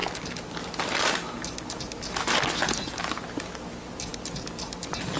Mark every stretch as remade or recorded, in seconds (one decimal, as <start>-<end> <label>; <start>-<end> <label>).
0.0-5.2 recorded